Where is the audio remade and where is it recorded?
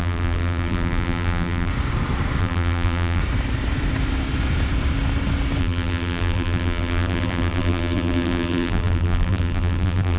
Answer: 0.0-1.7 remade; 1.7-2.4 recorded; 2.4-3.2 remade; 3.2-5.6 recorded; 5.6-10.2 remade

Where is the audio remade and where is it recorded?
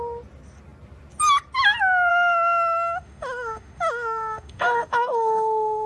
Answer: 0.0-2.1 recorded; 2.1-5.9 remade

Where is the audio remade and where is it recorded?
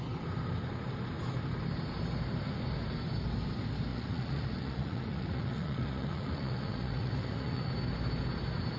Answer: 0.0-3.9 recorded; 3.9-7.7 remade; 7.7-8.8 recorded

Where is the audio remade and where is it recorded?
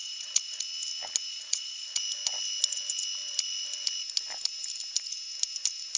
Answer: 0.0-0.6 remade; 0.6-1.3 recorded; 1.3-2.0 remade; 2.0-6.0 recorded